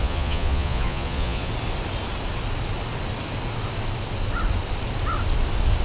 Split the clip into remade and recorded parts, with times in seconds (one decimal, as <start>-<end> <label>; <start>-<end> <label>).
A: 0.0-1.5 remade; 1.5-5.8 recorded